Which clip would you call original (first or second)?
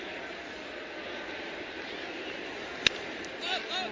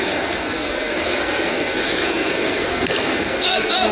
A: first